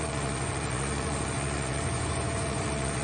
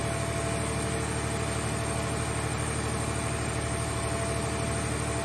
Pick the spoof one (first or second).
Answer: first